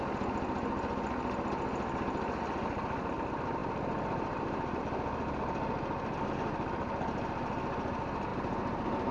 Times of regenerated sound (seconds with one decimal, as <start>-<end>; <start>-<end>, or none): 3.6-4.8; 8.3-9.1